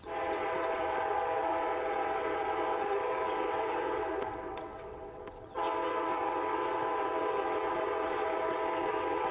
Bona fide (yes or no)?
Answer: no